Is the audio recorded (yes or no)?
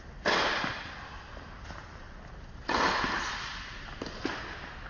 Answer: yes